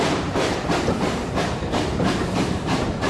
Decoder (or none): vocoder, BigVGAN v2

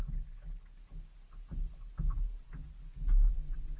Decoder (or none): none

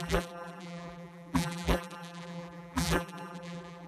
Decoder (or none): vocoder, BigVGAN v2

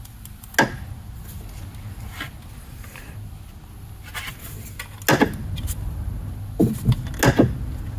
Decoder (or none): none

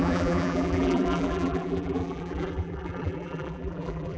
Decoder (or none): vocoder, BigVGAN v2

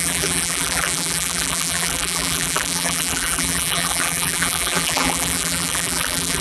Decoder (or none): vocoder, BigVGAN v2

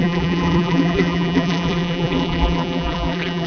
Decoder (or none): vocoder, BigVGAN v2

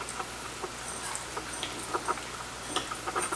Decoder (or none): none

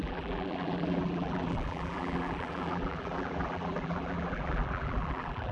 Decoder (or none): vocoder, BigVGAN v2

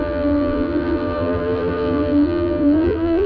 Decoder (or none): vocoder, BigVGAN v2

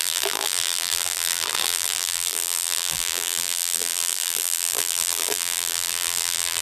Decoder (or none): vocoder, BigVGAN v2